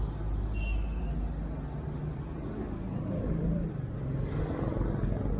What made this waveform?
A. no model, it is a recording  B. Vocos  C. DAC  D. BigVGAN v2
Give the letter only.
A